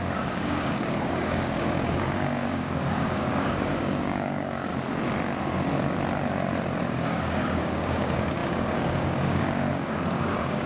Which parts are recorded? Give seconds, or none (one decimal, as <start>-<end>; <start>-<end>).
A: 4.7-6.8